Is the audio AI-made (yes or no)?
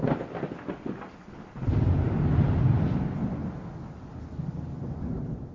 no